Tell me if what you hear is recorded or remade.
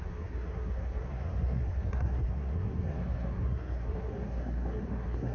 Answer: remade